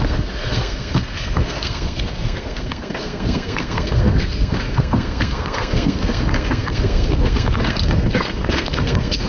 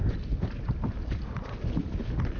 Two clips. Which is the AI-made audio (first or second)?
first